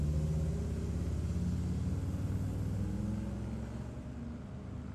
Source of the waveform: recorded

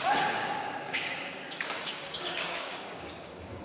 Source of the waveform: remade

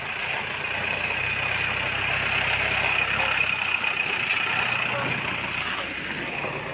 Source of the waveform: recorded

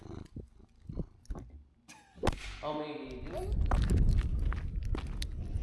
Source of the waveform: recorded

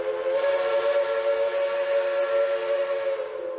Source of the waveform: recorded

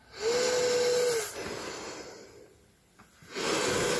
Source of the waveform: recorded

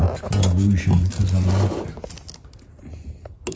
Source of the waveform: recorded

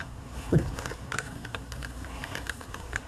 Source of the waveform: remade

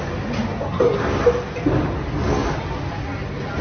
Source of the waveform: recorded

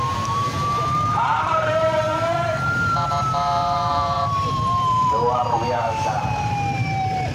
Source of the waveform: remade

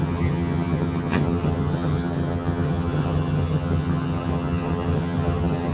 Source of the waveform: remade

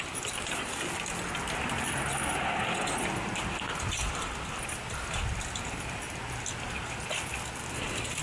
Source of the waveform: recorded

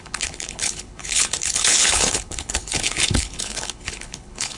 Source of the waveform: remade